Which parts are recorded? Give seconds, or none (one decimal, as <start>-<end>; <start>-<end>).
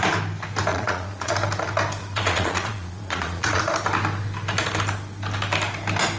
0.0-0.7; 1.3-2.0; 3.6-6.2